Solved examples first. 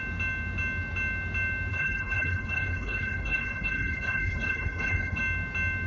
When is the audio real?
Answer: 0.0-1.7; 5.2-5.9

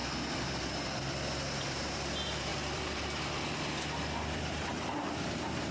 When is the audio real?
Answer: none